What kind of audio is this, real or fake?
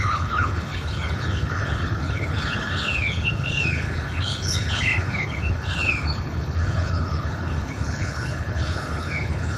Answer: fake